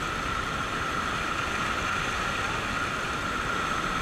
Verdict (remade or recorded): recorded